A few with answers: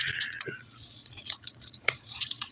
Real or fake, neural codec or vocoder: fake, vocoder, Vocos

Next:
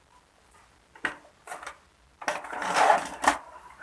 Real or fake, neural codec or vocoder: real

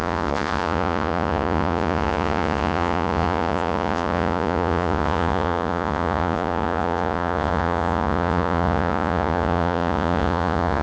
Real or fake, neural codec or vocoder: fake, vocoder, Vocos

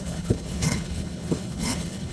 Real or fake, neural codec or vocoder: fake, codec, HILCodec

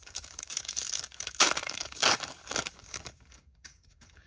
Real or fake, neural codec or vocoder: fake, codec, DAC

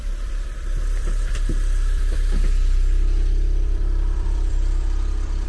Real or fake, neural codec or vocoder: fake, vocoder, BigVGAN v2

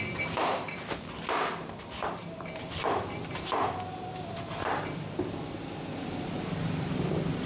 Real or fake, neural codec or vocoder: fake, vocoder, BigVGAN v2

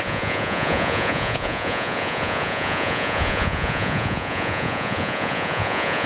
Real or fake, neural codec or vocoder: fake, vocoder, Vocos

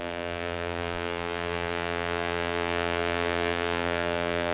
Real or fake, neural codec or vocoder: fake, vocoder, BigVGAN v2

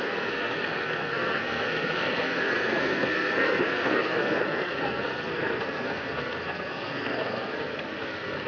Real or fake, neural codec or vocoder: fake, codec, SNAC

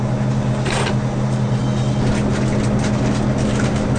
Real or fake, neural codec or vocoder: real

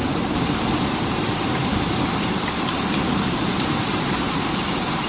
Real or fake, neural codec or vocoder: fake, vocoder, BigVGAN v2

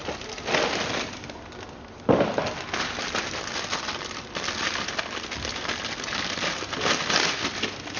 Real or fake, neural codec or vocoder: real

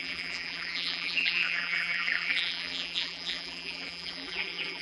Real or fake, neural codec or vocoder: fake, vocoder, BigVGAN v2